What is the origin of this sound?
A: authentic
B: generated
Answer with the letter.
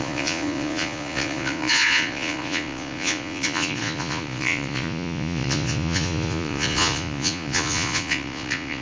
B